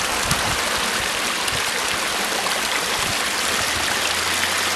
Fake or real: real